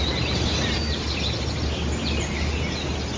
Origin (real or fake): real